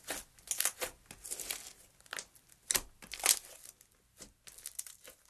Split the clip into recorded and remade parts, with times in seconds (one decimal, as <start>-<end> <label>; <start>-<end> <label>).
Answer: 0.0-5.3 recorded